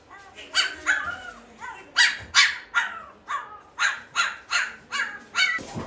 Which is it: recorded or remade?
recorded